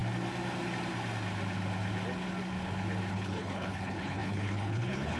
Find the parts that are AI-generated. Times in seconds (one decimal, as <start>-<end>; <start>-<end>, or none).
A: 3.1-5.2

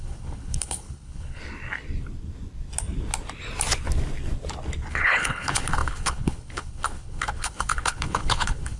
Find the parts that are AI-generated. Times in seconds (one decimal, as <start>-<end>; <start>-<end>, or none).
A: 0.0-1.4; 4.9-8.8

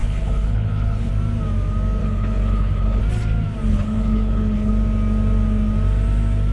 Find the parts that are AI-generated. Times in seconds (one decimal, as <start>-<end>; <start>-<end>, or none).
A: 0.0-1.1; 2.0-3.0; 3.7-4.7

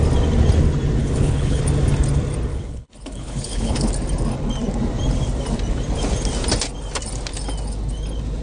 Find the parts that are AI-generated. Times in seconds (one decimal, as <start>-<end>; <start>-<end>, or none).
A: 1.0-1.6; 2.5-3.9

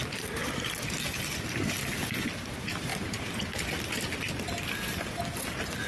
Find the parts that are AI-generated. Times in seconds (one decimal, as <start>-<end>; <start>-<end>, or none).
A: none

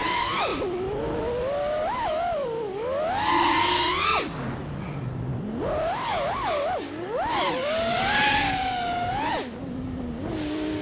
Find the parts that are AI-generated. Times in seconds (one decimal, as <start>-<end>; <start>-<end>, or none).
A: none

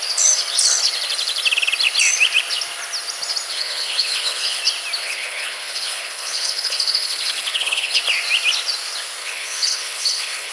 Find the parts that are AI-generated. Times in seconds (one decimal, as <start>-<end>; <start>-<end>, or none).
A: 3.5-4.6; 5.0-8.0; 9.2-10.5